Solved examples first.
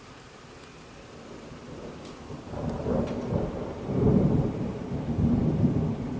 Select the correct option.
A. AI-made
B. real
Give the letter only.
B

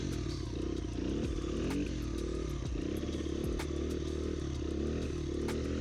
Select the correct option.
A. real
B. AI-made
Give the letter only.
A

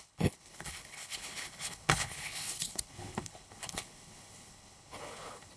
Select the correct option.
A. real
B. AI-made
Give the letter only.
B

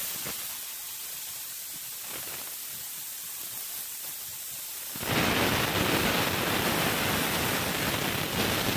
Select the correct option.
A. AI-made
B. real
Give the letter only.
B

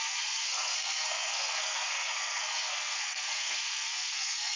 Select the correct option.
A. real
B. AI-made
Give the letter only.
B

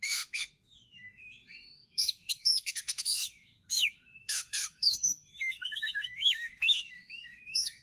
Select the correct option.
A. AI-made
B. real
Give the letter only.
A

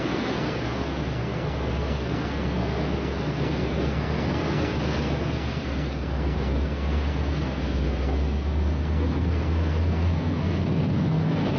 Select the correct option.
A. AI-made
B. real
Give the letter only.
A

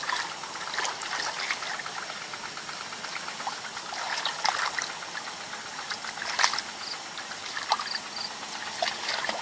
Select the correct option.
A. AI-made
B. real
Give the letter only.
B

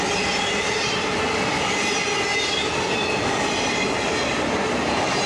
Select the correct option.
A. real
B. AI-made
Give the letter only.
A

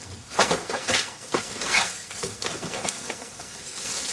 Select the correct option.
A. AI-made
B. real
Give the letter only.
A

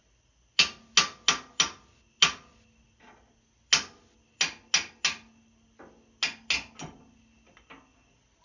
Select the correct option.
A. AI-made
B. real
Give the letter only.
B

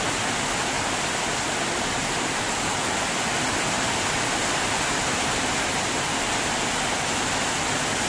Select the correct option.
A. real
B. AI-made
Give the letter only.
A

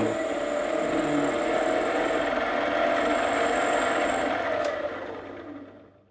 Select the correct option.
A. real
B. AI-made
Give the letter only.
A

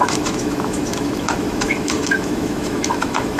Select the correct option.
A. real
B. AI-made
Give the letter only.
B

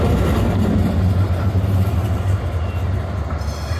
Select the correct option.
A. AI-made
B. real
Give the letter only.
B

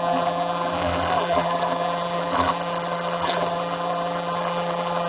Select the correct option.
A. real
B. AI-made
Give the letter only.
B